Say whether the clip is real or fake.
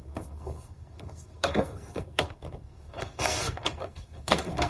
fake